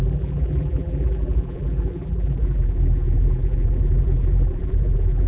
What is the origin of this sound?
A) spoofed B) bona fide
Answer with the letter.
A